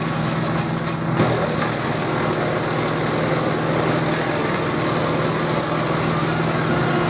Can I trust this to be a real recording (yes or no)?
yes